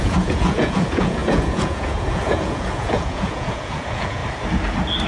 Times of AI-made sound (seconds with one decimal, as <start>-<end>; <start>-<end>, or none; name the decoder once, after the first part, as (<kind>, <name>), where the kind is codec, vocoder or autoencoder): 0.0-4.2 (vocoder, Vocos)